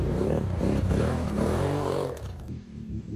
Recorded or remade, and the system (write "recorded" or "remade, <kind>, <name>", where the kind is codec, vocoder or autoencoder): remade, codec, DAC